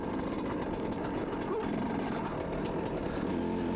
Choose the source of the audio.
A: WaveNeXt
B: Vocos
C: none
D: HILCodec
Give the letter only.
C